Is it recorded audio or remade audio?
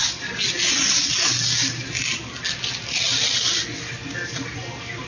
recorded